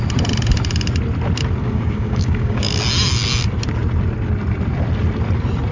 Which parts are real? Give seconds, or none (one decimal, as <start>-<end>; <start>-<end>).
0.0-1.6; 2.8-5.7